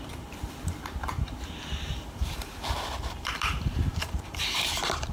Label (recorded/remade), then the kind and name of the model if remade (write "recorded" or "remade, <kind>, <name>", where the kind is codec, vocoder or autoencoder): remade, vocoder, BigVGAN v2